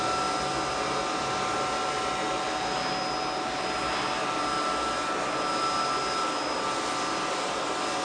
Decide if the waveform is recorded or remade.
recorded